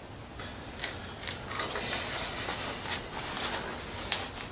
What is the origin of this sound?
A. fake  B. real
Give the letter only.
B